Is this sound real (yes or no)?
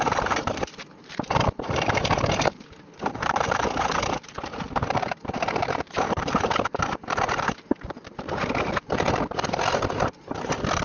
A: no